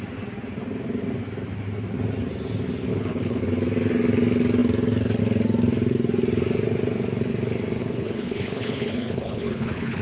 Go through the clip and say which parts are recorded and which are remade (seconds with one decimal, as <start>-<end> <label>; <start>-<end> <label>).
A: 0.0-2.9 recorded; 2.9-3.4 remade; 3.4-7.8 recorded; 7.8-10.0 remade